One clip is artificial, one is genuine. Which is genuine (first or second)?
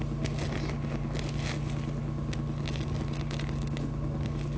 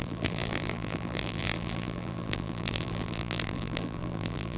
first